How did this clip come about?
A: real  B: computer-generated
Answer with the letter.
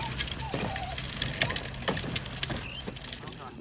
A